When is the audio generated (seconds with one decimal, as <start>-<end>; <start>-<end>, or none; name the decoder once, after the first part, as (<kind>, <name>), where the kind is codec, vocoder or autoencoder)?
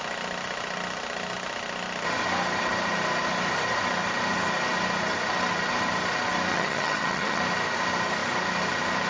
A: 6.5-7.4 (vocoder, HiFi-GAN)